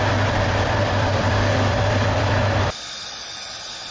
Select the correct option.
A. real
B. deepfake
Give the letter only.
B